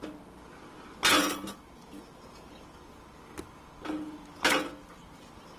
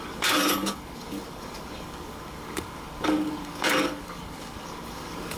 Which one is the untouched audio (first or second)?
first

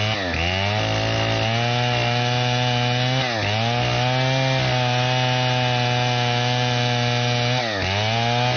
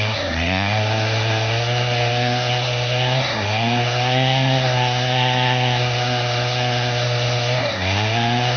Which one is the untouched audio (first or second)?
first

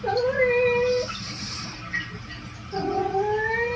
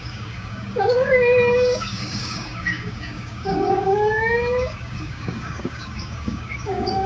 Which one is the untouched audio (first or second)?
first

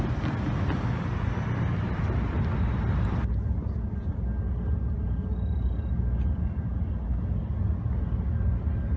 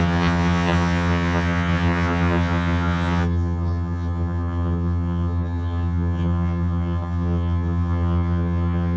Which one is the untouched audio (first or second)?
first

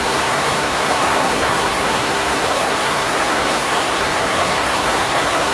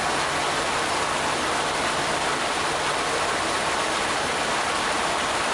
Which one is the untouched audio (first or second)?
second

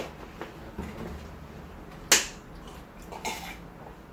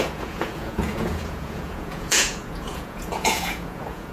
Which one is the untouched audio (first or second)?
first